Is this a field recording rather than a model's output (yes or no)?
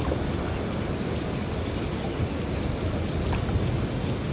yes